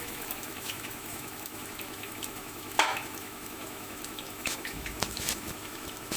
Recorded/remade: remade